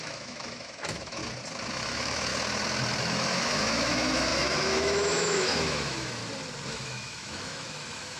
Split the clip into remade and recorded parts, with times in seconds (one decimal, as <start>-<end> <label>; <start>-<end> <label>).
0.0-1.2 remade; 1.2-1.7 recorded; 1.7-2.3 remade; 2.3-3.0 recorded; 3.0-6.2 remade; 6.2-6.7 recorded; 6.7-8.2 remade